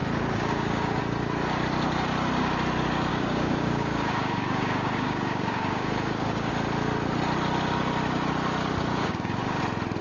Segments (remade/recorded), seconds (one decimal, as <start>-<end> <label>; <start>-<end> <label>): 0.0-1.0 remade; 1.0-3.1 recorded; 3.1-6.5 remade; 6.5-8.9 recorded; 8.9-9.6 remade; 9.6-10.0 recorded